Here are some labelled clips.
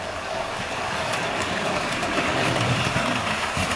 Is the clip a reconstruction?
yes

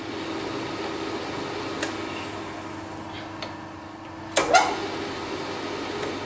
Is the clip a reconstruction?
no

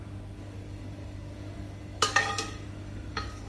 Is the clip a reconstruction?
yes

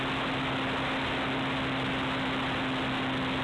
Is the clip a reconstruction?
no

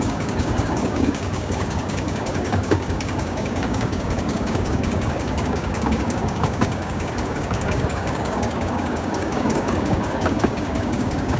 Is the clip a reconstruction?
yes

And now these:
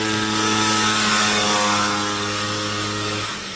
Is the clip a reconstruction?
yes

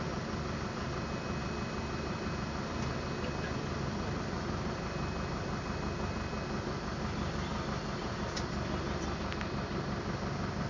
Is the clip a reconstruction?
no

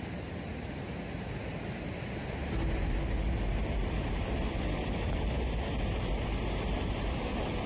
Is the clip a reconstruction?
no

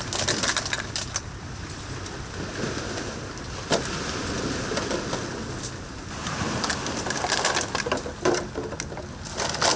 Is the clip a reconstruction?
no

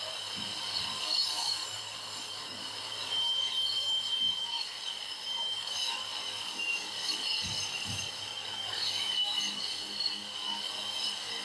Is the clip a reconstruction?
yes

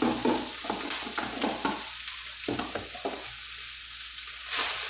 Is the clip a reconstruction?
no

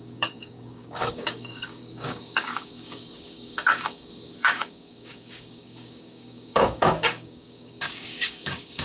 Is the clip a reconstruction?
yes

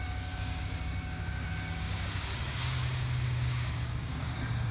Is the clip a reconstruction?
yes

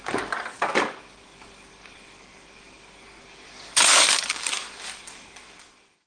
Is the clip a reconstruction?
yes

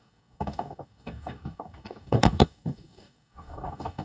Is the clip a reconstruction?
yes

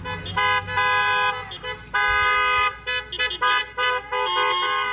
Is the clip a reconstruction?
no